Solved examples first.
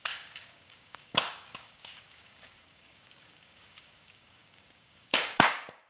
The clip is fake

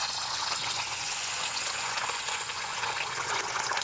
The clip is fake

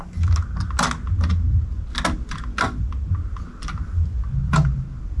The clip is real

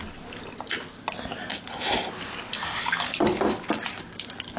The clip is real